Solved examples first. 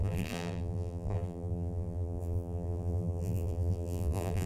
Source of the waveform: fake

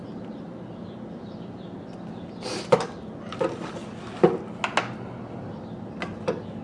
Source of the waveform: real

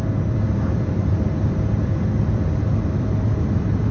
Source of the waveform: fake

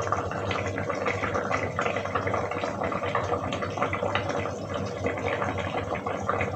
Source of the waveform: real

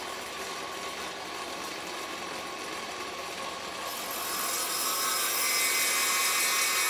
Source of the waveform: real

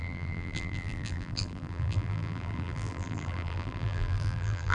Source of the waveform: fake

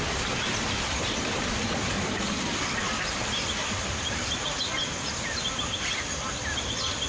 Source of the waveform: real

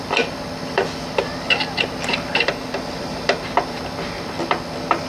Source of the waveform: fake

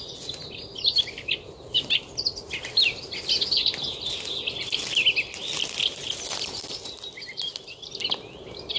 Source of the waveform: real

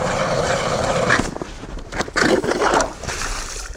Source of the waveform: fake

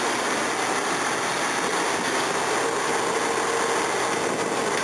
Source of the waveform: real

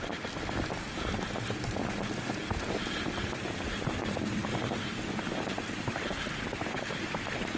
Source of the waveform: real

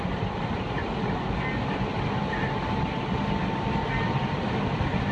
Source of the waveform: real